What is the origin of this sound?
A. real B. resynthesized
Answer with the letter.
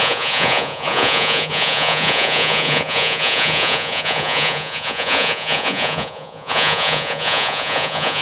B